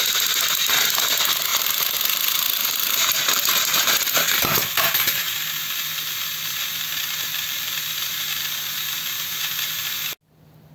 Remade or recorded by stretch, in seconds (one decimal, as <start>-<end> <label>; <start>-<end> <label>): 0.0-1.5 recorded; 1.5-5.7 remade; 5.7-10.7 recorded